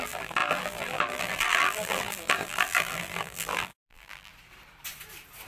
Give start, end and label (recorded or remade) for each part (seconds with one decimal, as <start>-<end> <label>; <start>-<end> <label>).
0.0-4.3 remade; 4.3-5.5 recorded